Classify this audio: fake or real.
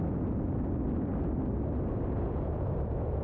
real